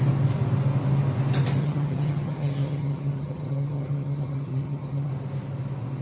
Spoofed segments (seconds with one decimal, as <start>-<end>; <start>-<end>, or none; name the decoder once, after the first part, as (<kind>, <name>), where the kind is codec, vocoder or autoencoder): 1.6-5.1 (vocoder, HiFi-GAN)